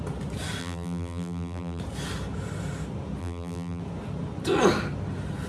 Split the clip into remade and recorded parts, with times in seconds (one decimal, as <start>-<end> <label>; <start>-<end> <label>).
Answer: 0.0-0.6 recorded; 0.6-1.8 remade; 1.8-3.2 recorded; 3.2-3.8 remade; 3.8-5.5 recorded